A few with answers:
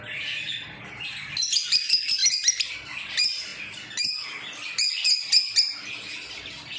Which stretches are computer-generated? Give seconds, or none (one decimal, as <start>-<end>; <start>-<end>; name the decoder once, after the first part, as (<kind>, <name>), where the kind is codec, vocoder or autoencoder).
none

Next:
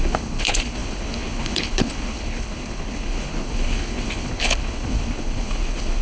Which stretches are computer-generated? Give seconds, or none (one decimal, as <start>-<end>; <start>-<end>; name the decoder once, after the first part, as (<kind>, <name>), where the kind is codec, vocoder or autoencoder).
0.0-6.0 (codec, HILCodec)

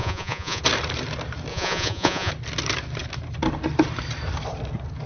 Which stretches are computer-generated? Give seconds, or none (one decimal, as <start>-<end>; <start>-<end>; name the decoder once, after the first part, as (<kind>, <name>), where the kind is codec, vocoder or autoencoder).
0.0-0.6 (vocoder, Vocos); 1.5-2.3

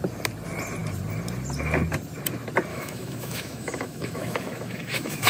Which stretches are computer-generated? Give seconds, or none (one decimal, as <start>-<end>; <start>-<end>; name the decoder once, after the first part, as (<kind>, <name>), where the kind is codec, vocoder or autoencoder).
2.7-5.3 (autoencoder, DAC-VAE)

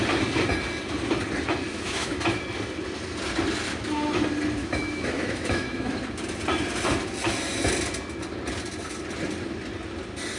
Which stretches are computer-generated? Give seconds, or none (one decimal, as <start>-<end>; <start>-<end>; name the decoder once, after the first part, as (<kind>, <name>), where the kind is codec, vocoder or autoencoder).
1.7-2.4 (autoencoder, DAC-VAE); 4.6-6.0

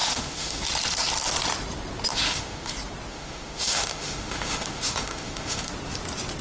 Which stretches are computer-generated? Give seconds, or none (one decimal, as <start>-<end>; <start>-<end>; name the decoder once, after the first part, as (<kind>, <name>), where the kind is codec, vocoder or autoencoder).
0.0-0.6 (autoencoder, DAC-VAE); 2.1-2.7; 3.1-5.7

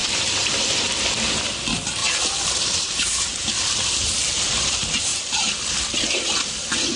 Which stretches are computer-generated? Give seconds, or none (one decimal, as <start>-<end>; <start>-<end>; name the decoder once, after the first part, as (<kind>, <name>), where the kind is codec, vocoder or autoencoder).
0.0-0.9 (vocoder, BigVGAN v2); 2.0-3.5; 5.1-6.5